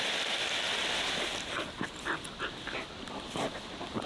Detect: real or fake fake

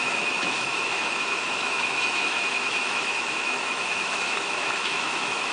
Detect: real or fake fake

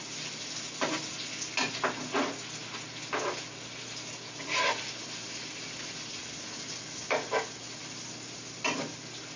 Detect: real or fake real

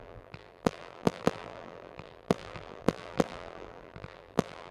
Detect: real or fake fake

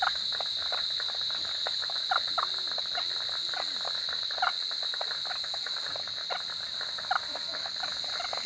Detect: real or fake real